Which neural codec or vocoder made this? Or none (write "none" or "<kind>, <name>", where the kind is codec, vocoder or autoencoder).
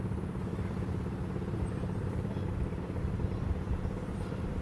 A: vocoder, BigVGAN v2